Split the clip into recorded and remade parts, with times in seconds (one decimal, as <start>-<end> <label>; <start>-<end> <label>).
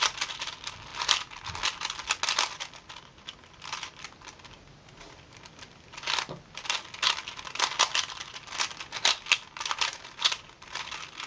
0.0-11.3 recorded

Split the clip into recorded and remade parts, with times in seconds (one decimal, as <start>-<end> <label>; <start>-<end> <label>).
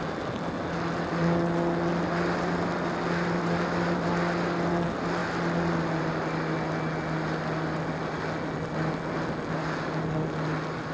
0.0-10.9 recorded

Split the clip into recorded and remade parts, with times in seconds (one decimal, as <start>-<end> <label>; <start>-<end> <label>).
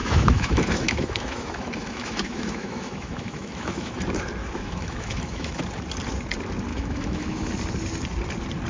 0.0-4.0 remade; 4.0-4.4 recorded; 4.4-5.6 remade; 5.6-6.7 recorded; 6.7-7.5 remade; 7.5-8.7 recorded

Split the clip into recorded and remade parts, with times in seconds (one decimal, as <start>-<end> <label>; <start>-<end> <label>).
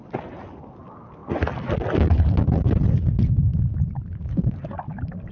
0.0-5.3 recorded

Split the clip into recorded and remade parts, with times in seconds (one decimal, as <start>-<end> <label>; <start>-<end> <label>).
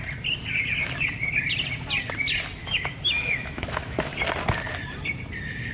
0.0-2.6 recorded; 2.6-4.1 remade; 4.1-5.7 recorded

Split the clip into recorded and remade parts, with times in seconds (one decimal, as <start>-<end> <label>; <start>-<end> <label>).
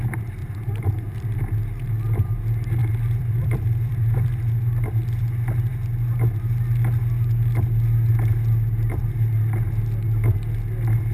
0.0-0.4 recorded; 0.4-1.4 remade; 1.4-2.8 recorded; 2.8-4.5 remade; 4.5-11.1 recorded